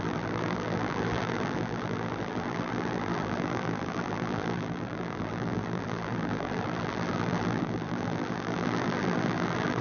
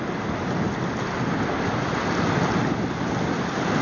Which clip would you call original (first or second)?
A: second